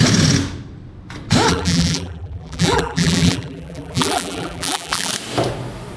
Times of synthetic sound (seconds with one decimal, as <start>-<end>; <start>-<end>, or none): 1.5-5.1